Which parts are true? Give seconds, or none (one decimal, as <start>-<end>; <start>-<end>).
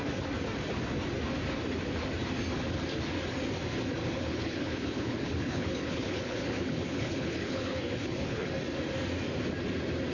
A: 0.0-4.0; 8.5-10.1